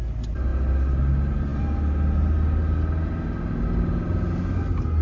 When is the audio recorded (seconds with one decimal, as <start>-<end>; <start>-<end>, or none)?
0.0-5.0